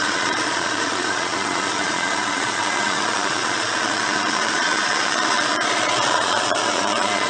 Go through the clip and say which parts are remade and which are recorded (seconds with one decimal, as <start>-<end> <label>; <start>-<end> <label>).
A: 0.0-7.3 remade